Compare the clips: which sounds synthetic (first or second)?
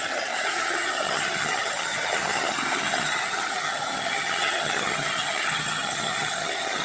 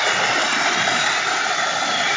first